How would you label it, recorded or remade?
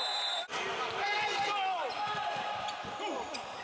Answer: recorded